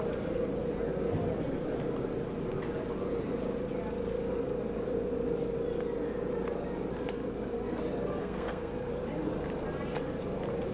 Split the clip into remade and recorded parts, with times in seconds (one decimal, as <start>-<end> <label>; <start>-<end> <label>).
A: 0.0-8.2 recorded; 8.2-8.7 remade; 8.7-10.7 recorded